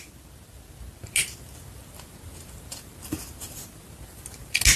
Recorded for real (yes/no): yes